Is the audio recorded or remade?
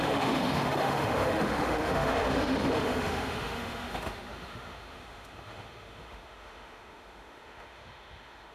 remade